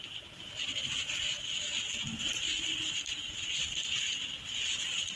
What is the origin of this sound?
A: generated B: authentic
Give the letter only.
B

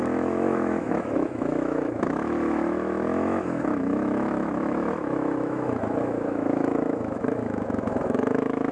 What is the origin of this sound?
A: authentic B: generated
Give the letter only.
B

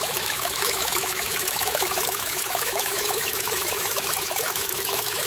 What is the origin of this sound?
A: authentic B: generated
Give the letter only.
B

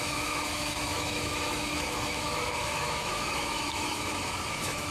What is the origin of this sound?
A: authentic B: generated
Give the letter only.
B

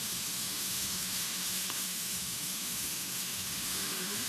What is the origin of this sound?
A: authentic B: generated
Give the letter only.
B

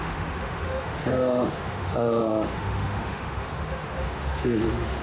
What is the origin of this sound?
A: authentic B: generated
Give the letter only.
B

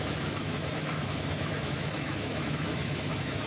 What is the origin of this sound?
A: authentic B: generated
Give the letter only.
B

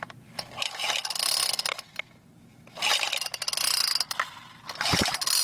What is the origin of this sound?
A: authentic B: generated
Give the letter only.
A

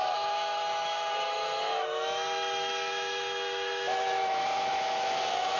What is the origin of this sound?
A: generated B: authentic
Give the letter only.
A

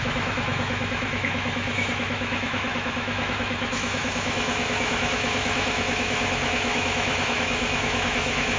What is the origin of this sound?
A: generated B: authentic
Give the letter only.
A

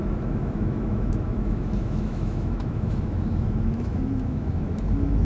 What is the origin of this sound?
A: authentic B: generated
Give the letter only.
B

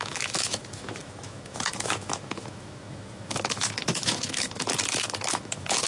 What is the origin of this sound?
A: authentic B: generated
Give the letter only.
B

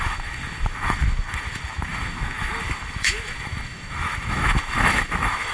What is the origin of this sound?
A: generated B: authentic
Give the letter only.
A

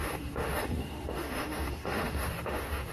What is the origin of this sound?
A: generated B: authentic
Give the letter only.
A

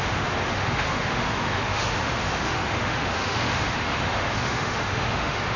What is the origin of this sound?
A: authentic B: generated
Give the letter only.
B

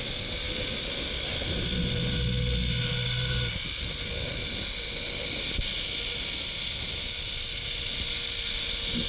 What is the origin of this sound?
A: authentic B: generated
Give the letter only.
A